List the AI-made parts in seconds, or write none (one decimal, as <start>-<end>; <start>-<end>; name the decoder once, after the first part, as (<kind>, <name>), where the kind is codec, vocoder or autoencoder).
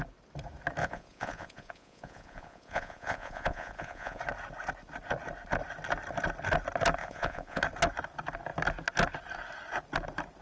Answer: 0.8-4.2 (vocoder, Vocos); 7.0-7.6